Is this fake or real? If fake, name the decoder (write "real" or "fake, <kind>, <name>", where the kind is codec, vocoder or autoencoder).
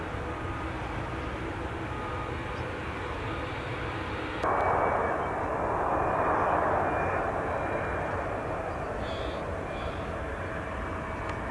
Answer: real